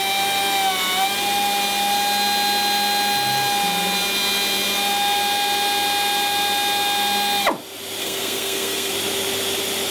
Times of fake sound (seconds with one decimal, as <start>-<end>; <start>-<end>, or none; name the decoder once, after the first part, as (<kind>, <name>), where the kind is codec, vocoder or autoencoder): 8.0-8.9 (codec, SNAC)